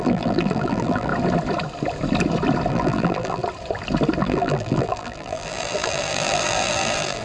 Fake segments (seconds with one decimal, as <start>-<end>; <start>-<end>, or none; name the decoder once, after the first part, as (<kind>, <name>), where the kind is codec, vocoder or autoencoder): 0.0-1.1 (vocoder, BigVGAN v2); 2.7-3.4; 4.2-7.2